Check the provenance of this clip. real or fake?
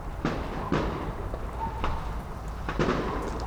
real